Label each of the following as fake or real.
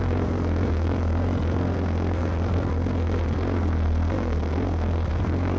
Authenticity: fake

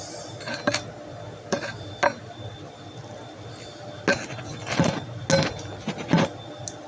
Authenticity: real